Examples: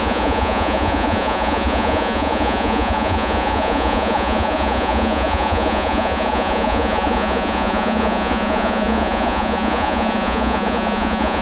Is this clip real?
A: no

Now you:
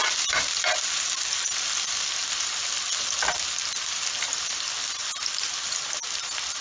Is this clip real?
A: yes